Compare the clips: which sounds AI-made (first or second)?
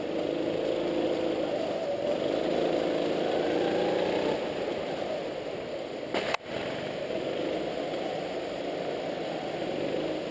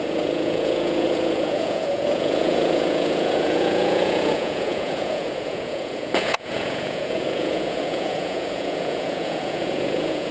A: second